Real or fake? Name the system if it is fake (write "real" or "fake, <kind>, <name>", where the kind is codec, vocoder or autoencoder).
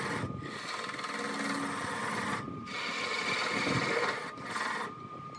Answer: real